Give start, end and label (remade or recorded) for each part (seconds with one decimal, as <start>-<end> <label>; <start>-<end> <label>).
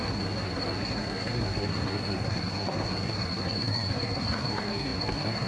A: 0.0-5.5 remade